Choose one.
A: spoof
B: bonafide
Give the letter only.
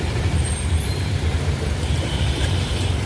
A